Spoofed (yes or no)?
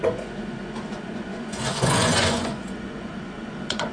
yes